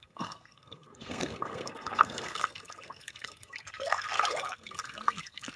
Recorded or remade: remade